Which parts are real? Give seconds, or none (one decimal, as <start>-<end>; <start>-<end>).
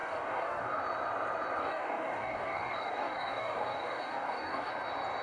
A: 0.8-1.6; 4.7-5.2